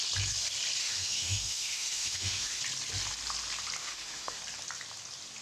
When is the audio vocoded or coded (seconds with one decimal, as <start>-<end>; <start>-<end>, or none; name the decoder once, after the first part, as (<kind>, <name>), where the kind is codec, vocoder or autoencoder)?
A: 0.8-2.6 (autoencoder, DAC-VAE); 3.8-4.4